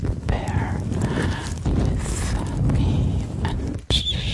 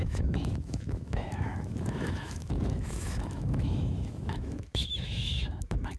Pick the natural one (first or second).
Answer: first